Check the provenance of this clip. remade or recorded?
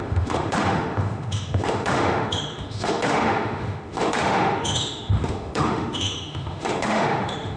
remade